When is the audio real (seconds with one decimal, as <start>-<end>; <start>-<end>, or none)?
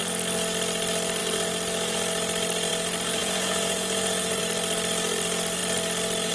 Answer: 0.0-3.2; 4.4-6.3